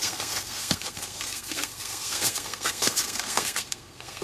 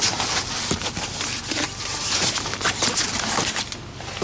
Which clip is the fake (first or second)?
first